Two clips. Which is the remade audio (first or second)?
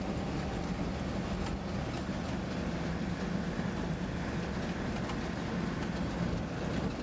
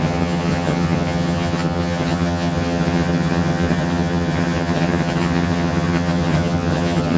second